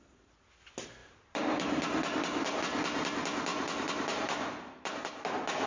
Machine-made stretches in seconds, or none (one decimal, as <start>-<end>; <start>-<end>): 1.0-2.6; 3.5-5.0